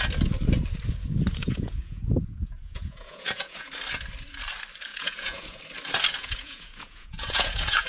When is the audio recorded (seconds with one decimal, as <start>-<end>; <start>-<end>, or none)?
0.0-1.4; 3.7-4.9; 5.6-6.2